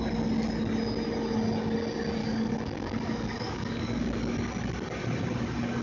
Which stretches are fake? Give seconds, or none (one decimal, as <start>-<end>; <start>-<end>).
2.2-4.2